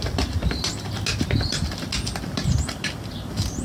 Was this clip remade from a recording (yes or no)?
no